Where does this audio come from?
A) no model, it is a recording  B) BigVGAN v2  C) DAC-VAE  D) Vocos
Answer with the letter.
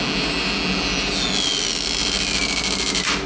A